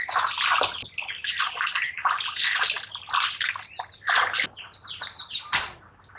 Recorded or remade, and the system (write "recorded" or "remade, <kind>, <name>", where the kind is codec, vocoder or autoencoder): recorded